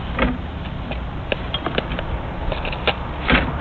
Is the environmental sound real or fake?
real